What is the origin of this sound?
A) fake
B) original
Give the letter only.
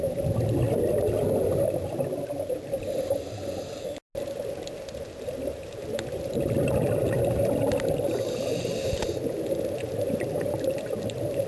B